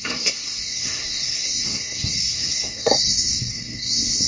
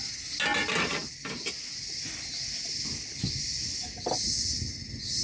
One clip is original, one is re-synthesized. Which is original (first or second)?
second